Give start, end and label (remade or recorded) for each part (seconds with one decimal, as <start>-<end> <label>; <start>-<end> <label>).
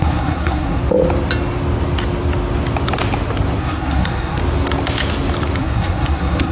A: 0.0-0.8 remade; 0.8-3.6 recorded; 3.6-4.4 remade; 4.4-5.6 recorded; 5.6-6.5 remade